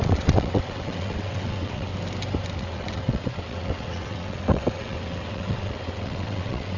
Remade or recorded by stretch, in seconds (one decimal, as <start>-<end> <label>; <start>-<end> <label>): 0.0-1.9 remade; 1.9-2.6 recorded; 2.6-6.8 remade